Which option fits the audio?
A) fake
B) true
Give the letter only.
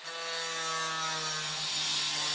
B